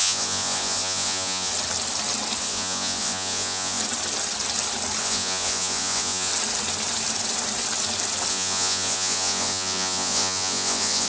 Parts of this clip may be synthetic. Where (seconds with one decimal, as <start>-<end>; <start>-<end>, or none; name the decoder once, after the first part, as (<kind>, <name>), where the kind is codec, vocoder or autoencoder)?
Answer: 0.0-1.5 (vocoder, Vocos); 2.4-3.8; 5.0-6.3; 8.3-11.1